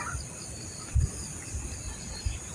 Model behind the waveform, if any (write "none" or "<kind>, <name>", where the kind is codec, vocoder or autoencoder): none